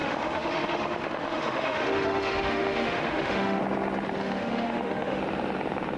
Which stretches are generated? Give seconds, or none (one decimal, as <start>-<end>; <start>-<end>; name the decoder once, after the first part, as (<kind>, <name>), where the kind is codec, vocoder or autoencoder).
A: 0.0-3.6 (autoencoder, DAC-VAE); 4.2-5.2

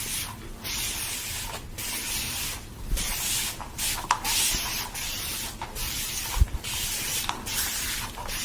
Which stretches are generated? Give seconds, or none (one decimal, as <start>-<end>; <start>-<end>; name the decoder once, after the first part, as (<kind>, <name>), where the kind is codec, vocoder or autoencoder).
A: 0.0-1.8 (vocoder, BigVGAN v2); 5.0-8.4

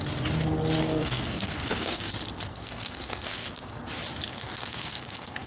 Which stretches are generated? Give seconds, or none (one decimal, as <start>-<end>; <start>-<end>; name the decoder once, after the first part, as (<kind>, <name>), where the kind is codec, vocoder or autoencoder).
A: 0.8-2.1 (codec, SNAC); 2.5-3.8; 4.3-5.5

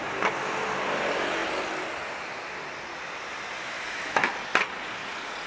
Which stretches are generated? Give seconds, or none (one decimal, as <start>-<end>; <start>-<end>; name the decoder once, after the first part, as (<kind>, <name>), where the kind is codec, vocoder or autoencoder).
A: 3.6-4.3 (autoencoder, DAC-VAE)

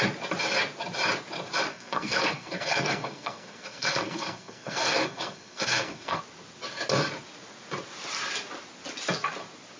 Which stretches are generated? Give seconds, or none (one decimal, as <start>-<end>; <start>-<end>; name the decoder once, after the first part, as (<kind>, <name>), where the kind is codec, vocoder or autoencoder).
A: 1.7-6.2 (codec, SNAC)